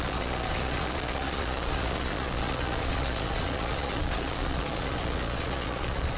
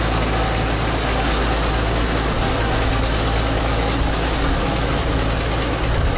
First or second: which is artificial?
first